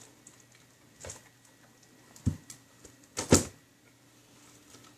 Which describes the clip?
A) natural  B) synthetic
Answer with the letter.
A